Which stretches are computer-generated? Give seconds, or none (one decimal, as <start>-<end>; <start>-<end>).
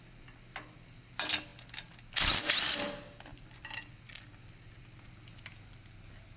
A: none